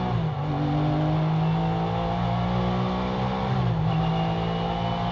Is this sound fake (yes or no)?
no